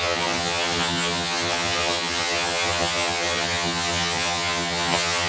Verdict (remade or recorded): remade